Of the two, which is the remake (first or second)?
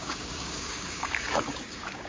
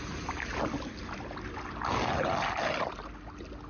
first